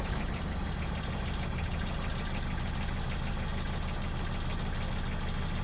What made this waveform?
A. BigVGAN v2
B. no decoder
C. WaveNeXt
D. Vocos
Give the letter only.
B